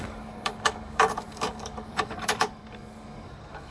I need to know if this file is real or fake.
fake